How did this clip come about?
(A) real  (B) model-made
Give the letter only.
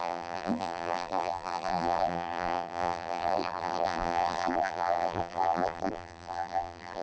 B